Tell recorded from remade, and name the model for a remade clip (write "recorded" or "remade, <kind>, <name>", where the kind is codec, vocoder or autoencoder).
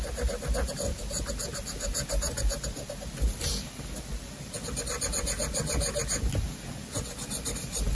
recorded